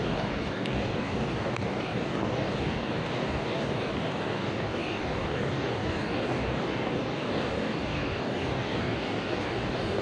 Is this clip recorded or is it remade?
remade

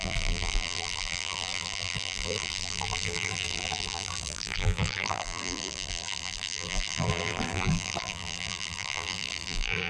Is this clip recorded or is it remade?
remade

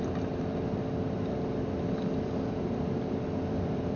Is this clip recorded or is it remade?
recorded